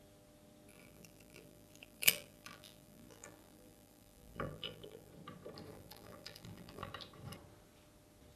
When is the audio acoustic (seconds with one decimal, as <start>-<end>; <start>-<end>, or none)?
0.0-0.7; 5.1-5.7; 6.9-8.4